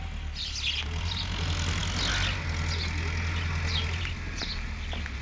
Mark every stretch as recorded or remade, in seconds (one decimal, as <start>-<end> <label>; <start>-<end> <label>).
0.0-5.2 recorded